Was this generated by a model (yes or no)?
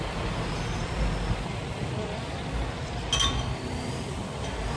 no